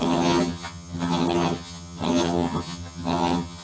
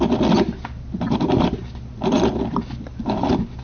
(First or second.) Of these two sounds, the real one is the second